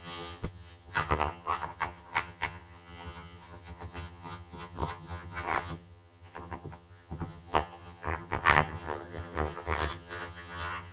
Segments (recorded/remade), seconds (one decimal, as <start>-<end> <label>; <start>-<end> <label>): 0.0-10.9 remade